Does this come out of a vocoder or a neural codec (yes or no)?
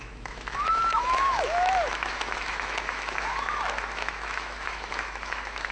yes